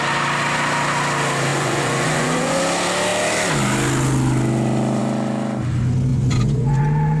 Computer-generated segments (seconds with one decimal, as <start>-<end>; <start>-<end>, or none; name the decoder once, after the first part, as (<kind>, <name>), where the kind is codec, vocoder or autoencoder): 1.5-2.6 (vocoder, Vocos); 6.1-6.8